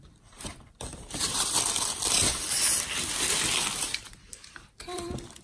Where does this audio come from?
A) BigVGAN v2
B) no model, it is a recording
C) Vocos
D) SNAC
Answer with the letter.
A